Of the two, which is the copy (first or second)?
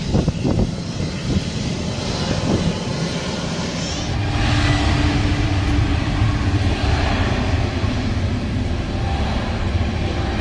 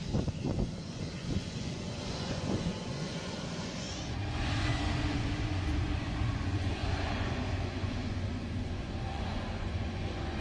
second